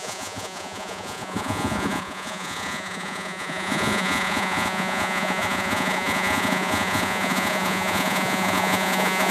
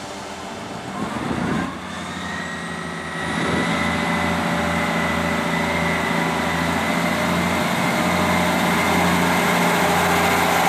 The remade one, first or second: first